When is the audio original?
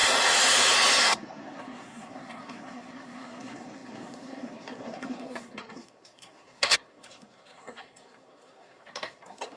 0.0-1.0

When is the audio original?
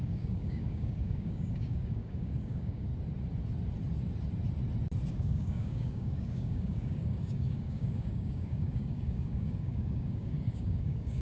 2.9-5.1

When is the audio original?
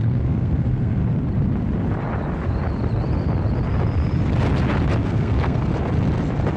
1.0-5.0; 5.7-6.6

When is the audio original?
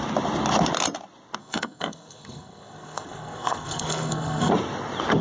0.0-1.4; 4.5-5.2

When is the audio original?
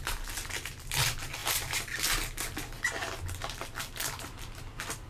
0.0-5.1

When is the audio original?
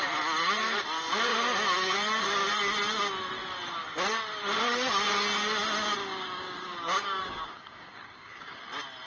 0.0-6.0; 8.6-9.1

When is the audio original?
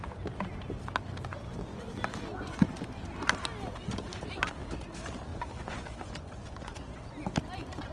0.0-1.3; 1.8-2.3; 3.0-5.3; 7.0-7.9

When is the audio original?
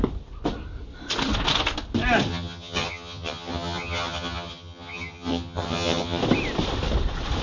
0.0-2.3; 6.2-7.4